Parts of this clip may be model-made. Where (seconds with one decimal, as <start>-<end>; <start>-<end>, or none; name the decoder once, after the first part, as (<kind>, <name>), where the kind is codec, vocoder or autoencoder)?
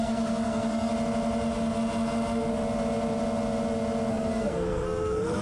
0.0-0.9 (codec, SNAC); 4.1-5.4